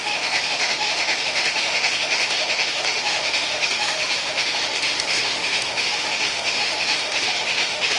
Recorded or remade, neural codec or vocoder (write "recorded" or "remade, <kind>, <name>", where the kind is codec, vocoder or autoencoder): remade, autoencoder, DAC-VAE